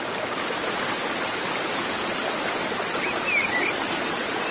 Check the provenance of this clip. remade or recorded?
recorded